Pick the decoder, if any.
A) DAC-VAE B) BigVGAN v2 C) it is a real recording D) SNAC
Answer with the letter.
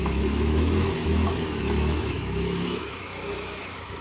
A